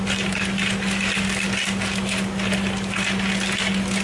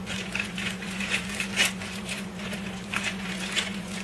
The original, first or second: first